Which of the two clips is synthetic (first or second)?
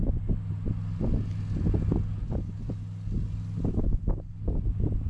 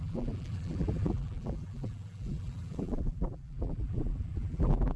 second